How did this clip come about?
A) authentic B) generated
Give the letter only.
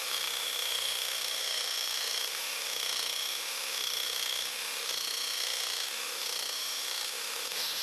B